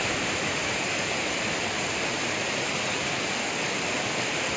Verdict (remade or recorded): recorded